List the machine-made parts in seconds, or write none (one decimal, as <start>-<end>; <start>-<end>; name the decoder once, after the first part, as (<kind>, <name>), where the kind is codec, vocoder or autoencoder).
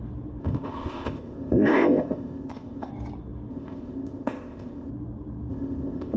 0.4-2.9 (codec, ZipCodec); 3.5-4.9; 5.5-6.2